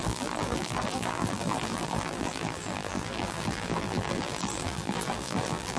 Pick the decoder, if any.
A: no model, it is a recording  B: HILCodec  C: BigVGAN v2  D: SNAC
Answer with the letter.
C